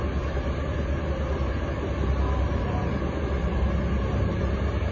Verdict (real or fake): real